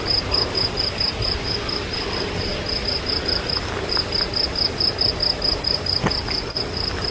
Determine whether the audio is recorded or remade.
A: recorded